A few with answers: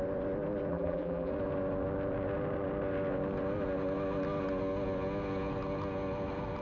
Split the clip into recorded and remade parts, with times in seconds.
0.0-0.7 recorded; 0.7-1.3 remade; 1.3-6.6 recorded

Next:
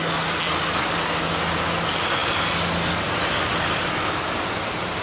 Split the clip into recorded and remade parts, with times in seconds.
0.0-5.0 recorded

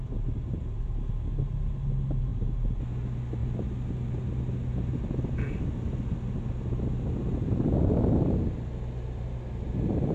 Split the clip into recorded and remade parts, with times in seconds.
0.0-10.1 recorded

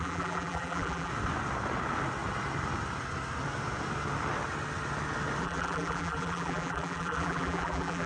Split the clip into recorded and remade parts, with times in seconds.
0.0-1.1 remade; 1.1-5.4 recorded; 5.4-8.1 remade

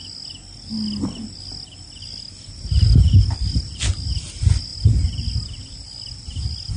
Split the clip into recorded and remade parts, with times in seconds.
0.0-6.8 recorded

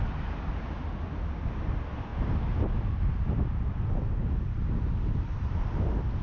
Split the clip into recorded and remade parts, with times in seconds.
0.0-6.2 recorded

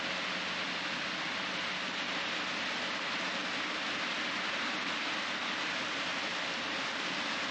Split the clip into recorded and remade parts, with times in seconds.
0.0-7.5 recorded

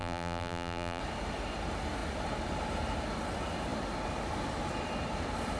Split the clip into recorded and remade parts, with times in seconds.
0.0-1.0 remade; 1.0-5.6 recorded